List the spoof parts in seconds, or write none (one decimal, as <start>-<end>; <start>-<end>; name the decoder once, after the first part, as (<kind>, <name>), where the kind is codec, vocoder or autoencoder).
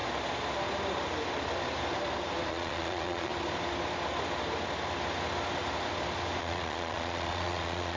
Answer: 2.5-3.3 (vocoder, Vocos); 6.4-8.0